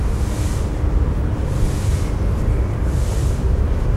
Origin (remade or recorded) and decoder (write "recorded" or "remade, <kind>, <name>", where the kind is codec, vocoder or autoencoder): recorded